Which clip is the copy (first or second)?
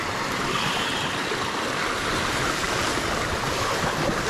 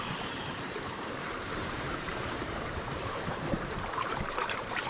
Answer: second